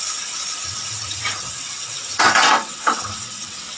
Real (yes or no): no